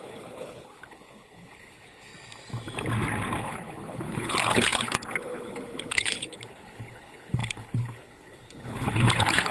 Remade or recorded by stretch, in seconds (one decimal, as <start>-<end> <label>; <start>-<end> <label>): 0.0-2.1 remade; 2.1-3.4 recorded; 3.4-9.5 remade